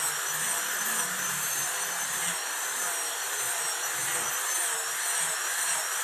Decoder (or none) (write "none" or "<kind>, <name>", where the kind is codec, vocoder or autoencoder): none